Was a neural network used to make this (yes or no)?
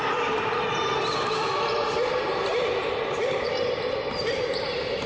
yes